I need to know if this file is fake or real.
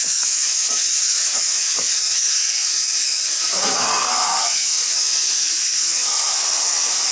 fake